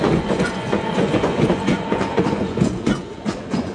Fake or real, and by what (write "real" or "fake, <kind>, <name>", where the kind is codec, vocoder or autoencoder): fake, vocoder, Vocos